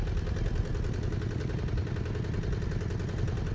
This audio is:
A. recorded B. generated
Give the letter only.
A